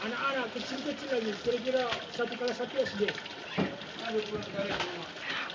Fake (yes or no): no